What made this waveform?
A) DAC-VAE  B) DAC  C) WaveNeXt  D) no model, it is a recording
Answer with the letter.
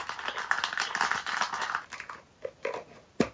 D